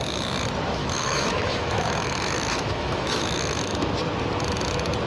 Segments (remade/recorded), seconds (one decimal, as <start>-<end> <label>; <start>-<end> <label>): 0.0-0.8 recorded; 0.8-3.9 remade; 3.9-5.1 recorded